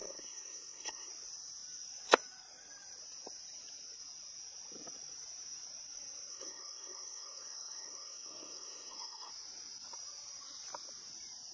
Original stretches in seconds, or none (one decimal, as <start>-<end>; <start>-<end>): 1.1-6.3; 9.3-11.5